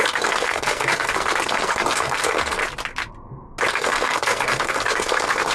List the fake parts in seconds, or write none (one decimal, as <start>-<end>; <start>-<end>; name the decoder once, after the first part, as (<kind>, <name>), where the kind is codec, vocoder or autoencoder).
0.0-2.6 (codec, SNAC); 3.7-5.5